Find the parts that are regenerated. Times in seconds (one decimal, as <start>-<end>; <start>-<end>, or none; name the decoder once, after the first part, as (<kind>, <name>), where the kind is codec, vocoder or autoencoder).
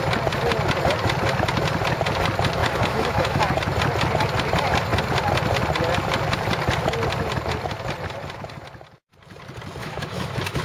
2.6-3.4 (autoencoder, DAC-VAE); 9.8-10.6